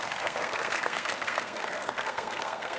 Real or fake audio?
fake